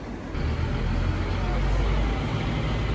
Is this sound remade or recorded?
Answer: recorded